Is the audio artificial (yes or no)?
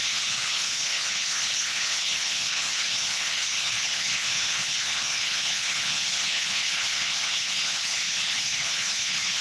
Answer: yes